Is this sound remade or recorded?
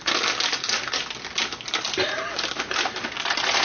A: recorded